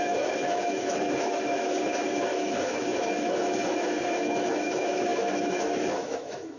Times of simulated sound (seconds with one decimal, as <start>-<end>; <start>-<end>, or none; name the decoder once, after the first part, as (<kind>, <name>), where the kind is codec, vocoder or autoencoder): 0.0-6.6 (autoencoder, DAC-VAE)